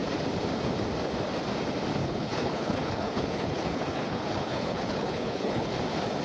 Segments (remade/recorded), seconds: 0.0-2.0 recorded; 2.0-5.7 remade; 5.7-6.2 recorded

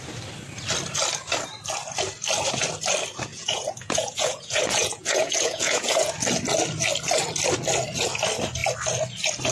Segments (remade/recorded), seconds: 0.0-3.3 recorded; 3.3-6.1 remade; 6.1-9.5 recorded

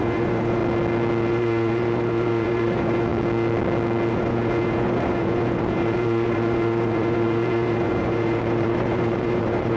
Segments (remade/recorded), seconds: 0.0-0.6 remade; 0.6-1.3 recorded; 1.3-3.1 remade; 3.1-4.1 recorded; 4.1-9.8 remade

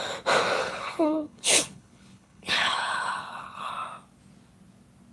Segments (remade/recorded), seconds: 0.0-0.6 recorded; 0.6-3.7 remade; 3.7-5.1 recorded

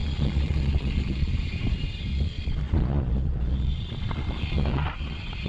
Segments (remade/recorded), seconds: 0.0-1.3 remade; 1.3-2.1 recorded; 2.1-5.5 remade

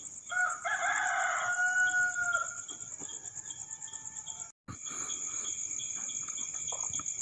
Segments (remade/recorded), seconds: 0.0-7.2 recorded

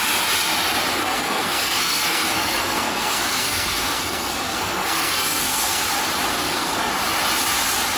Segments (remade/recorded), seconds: 0.0-1.0 recorded; 1.0-5.8 remade; 5.8-6.3 recorded; 6.3-6.9 remade; 6.9-8.0 recorded